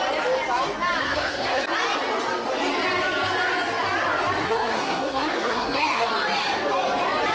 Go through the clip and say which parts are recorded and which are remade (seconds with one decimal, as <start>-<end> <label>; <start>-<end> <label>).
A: 0.0-1.0 recorded; 1.0-1.6 remade; 1.6-4.4 recorded; 4.4-6.1 remade; 6.1-7.3 recorded